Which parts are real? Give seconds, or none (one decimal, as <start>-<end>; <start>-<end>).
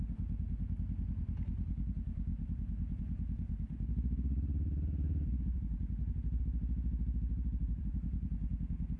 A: 0.0-2.3; 6.4-7.6; 8.3-9.0